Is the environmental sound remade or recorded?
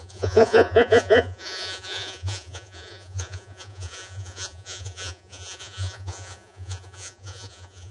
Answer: remade